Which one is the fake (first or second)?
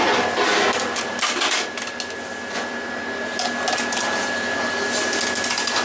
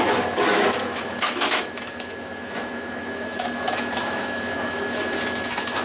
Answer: second